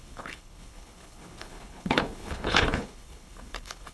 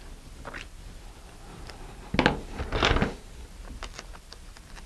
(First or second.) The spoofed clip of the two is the first